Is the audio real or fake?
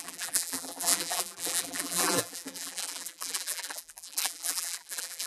fake